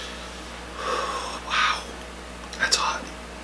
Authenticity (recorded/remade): recorded